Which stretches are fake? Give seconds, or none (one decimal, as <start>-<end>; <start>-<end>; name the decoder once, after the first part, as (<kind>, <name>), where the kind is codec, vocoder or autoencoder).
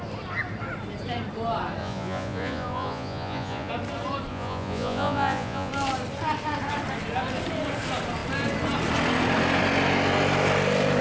1.8-3.7 (vocoder, Vocos); 4.3-5.7